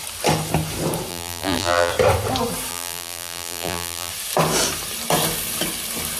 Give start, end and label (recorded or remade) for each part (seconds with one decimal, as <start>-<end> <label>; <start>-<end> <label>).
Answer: 0.0-1.1 recorded; 1.1-1.9 remade; 1.9-2.7 recorded; 2.7-4.1 remade; 4.1-6.2 recorded